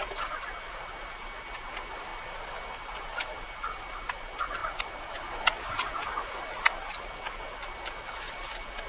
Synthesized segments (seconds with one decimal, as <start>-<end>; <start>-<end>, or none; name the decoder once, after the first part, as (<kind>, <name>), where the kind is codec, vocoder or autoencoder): none